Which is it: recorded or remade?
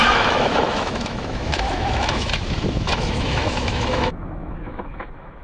remade